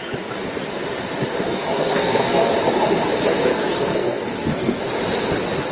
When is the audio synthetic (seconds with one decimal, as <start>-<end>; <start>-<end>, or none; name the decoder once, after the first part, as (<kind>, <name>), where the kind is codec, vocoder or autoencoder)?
1.5-2.5 (codec, SNAC); 3.5-4.8